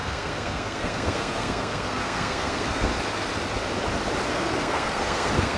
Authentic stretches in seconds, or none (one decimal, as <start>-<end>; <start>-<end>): 2.9-4.3